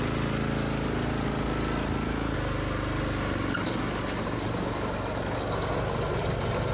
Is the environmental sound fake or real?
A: real